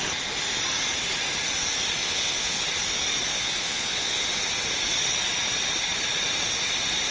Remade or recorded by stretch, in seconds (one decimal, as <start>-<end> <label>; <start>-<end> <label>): 0.0-2.0 recorded; 2.0-2.6 remade; 2.6-3.3 recorded; 3.3-4.2 remade; 4.2-7.1 recorded